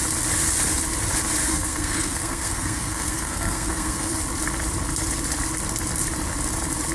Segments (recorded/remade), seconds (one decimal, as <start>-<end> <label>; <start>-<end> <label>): 0.0-1.4 recorded; 1.4-4.2 remade; 4.2-6.9 recorded